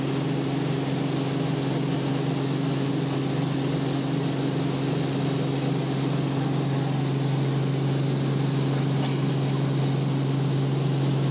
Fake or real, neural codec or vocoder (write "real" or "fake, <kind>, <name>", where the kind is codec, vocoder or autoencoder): real